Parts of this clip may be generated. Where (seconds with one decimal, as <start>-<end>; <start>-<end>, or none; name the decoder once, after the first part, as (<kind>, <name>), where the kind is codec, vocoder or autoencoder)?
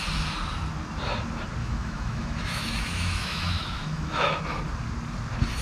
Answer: 1.6-4.4 (autoencoder, DAC-VAE)